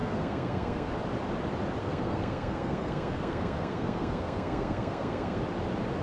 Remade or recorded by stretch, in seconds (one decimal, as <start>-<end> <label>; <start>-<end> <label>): 0.0-0.9 remade; 0.9-1.8 recorded; 1.8-5.4 remade; 5.4-6.0 recorded